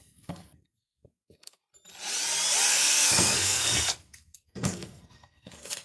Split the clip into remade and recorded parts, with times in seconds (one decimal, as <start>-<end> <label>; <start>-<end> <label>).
0.0-1.6 remade; 1.6-2.7 recorded; 2.7-5.8 remade